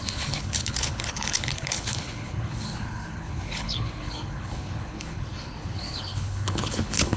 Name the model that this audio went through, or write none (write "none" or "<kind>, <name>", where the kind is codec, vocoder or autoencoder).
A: codec, HILCodec